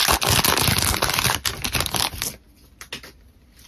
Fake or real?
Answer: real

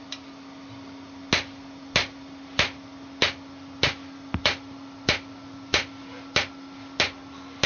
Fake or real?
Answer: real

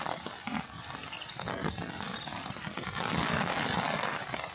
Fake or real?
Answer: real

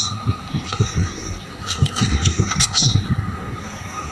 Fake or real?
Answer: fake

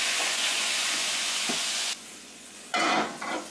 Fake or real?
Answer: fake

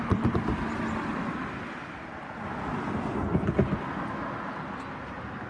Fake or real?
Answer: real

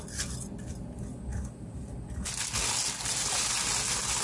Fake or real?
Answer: real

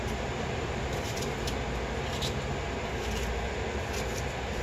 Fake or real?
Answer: real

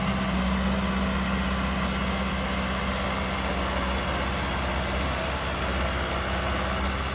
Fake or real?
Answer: real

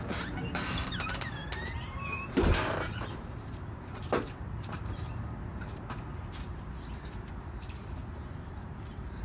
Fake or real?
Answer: fake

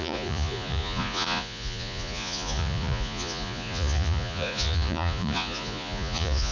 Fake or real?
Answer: fake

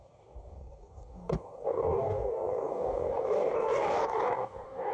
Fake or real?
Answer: fake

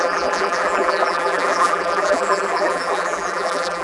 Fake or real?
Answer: fake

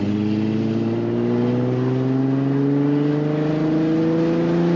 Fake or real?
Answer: real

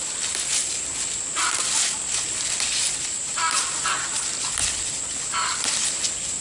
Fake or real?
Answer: real